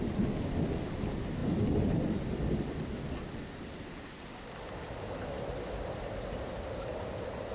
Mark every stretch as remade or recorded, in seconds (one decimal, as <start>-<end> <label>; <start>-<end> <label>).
0.0-7.5 recorded